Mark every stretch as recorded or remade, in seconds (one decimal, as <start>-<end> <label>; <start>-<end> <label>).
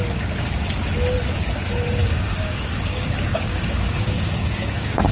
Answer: 0.0-2.0 recorded; 2.0-5.1 remade